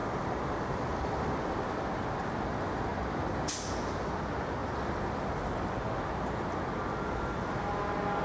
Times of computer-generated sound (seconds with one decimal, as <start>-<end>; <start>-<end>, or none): 0.0-1.3